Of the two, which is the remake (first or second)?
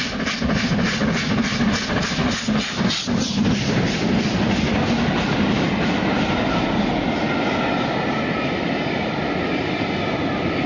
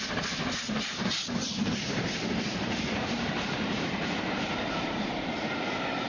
second